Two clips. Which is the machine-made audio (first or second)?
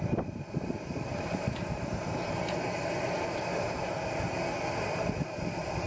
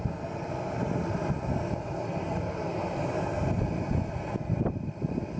first